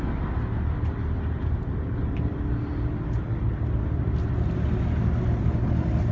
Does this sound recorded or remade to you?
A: recorded